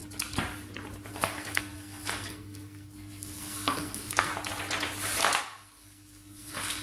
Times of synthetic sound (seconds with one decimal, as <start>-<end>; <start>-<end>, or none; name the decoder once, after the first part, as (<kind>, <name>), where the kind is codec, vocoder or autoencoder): 1.1-4.3 (codec, SNAC); 5.4-6.8